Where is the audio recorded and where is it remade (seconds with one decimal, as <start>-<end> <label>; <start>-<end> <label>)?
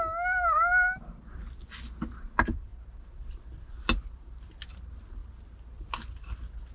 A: 0.0-6.7 recorded